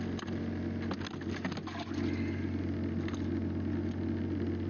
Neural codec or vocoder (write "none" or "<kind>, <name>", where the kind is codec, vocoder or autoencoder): none